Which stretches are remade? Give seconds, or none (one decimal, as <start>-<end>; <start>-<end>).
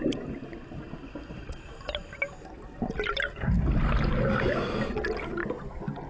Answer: none